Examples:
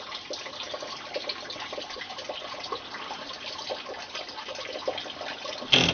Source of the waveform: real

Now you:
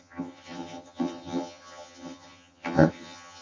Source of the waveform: fake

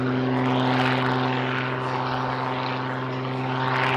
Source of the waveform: real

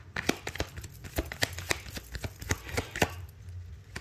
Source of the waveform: real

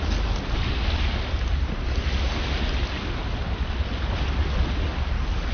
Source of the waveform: real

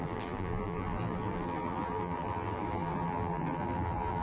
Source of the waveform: fake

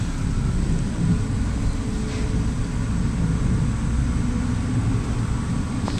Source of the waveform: real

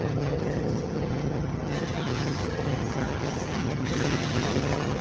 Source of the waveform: fake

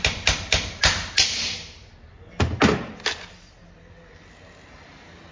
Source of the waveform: real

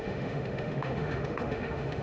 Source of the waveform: fake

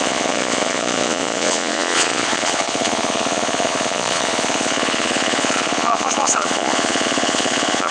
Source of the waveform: fake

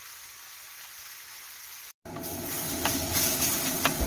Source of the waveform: real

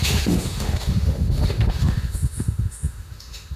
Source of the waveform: fake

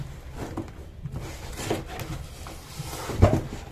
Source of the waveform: real